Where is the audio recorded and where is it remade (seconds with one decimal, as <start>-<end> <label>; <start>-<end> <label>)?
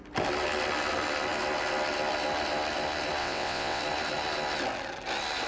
0.0-3.2 recorded; 3.2-3.8 remade; 3.8-5.5 recorded